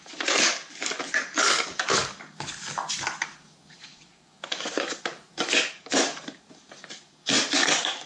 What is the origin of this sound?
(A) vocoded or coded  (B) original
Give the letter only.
A